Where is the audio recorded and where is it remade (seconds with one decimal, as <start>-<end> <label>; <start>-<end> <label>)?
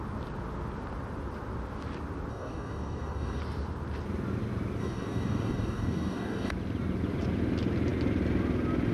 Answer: 0.0-2.3 recorded; 2.3-3.4 remade; 3.4-4.8 recorded; 4.8-6.5 remade; 6.5-8.9 recorded